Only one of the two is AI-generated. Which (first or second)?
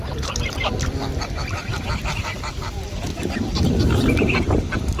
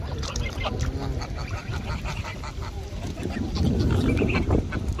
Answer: first